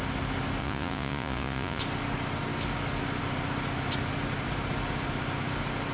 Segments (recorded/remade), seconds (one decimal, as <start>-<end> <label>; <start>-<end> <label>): 0.0-0.6 recorded; 0.6-1.8 remade; 1.8-5.9 recorded